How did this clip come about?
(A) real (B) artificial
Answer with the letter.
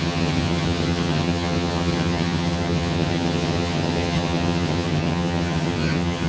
B